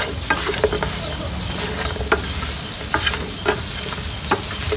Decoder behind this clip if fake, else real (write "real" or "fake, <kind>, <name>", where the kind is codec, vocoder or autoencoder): real